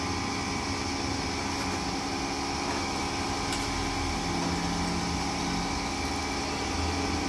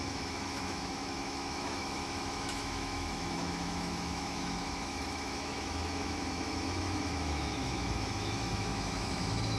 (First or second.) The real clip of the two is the first